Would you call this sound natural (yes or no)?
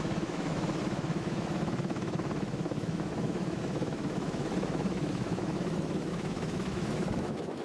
no